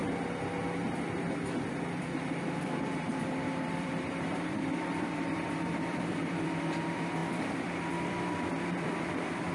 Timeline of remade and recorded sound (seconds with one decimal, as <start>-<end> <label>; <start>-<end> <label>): 0.0-2.0 recorded; 2.0-9.5 remade